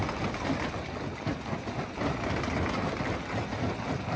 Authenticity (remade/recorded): recorded